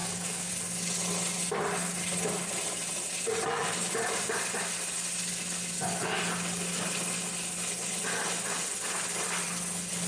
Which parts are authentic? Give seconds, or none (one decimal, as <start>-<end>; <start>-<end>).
0.5-10.1